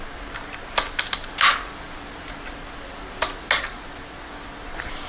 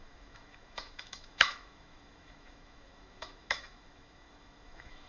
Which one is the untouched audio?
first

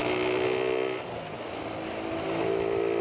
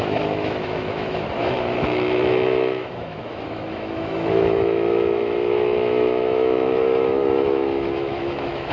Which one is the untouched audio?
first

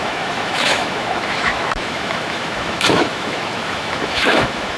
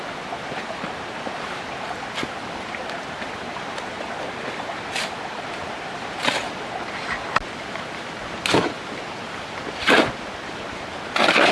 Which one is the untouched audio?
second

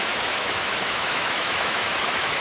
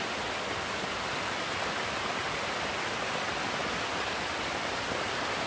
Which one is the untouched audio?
second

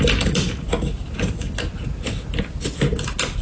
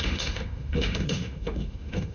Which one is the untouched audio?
first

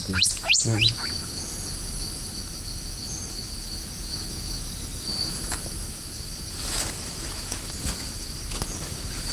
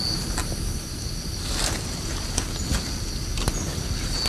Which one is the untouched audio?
second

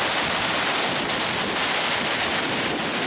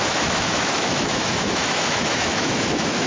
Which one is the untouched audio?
first